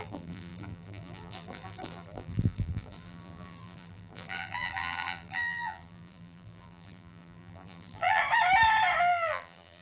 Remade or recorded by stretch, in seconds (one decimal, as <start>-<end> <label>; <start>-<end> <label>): 0.0-8.2 remade; 8.2-9.0 recorded; 9.0-9.8 remade